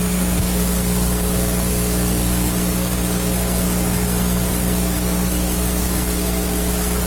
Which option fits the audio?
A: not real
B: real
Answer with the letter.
A